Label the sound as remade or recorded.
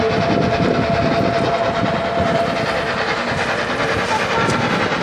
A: recorded